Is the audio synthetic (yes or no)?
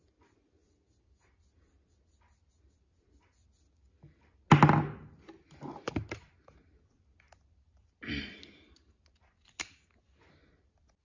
no